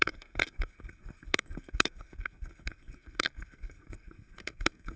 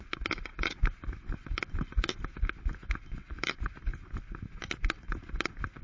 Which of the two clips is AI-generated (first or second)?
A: first